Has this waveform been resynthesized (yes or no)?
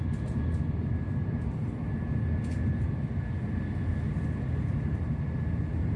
no